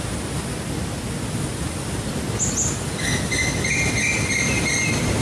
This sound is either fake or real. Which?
real